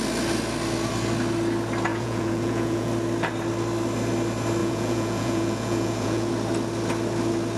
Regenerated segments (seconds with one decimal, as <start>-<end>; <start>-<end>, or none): 1.9-2.9; 4.6-6.3